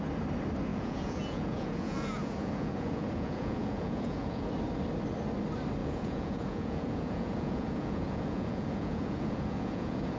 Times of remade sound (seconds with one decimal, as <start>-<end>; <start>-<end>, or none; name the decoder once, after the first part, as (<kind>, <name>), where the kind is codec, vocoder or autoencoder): 0.7-4.5 (vocoder, Vocos); 5.8-10.2